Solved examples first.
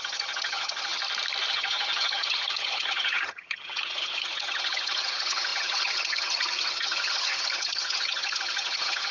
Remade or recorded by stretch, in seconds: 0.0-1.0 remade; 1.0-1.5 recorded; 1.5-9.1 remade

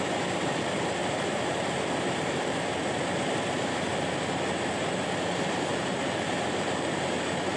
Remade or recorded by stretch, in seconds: 0.0-3.9 remade; 3.9-4.7 recorded; 4.7-7.6 remade

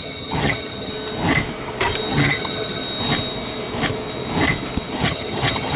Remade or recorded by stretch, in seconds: 0.0-0.9 remade; 0.9-2.1 recorded; 2.1-2.8 remade; 2.8-4.9 recorded; 4.9-5.8 remade